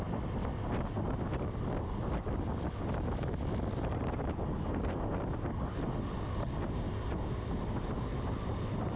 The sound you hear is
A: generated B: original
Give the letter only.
B